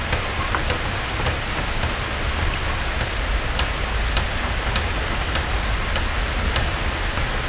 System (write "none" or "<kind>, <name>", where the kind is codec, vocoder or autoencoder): none